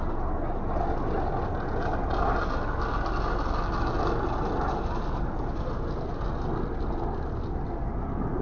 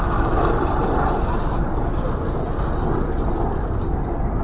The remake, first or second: second